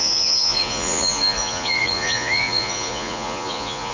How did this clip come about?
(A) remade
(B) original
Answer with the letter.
A